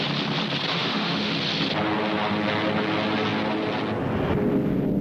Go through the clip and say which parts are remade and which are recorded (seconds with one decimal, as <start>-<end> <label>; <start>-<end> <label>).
0.0-0.7 recorded; 0.7-1.3 remade; 1.3-5.0 recorded